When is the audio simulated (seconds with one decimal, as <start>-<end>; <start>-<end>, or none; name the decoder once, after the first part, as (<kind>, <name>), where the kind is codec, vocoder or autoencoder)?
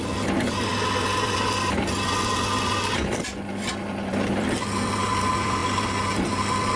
none